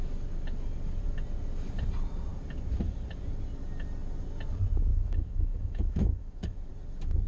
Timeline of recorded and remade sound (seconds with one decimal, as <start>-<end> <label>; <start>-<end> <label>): 0.0-4.9 recorded; 4.9-6.7 remade; 6.7-7.3 recorded